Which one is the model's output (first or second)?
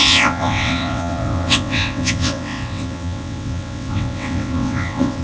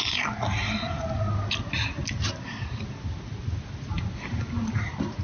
first